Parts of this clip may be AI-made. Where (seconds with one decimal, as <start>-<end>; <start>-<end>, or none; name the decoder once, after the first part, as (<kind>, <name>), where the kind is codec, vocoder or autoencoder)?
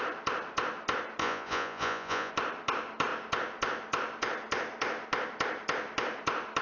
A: 1.2-2.3 (vocoder, Vocos)